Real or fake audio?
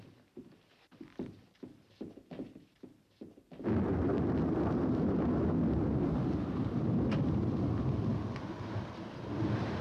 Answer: real